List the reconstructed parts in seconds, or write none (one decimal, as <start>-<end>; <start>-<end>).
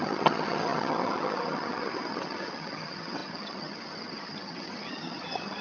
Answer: 0.0-5.6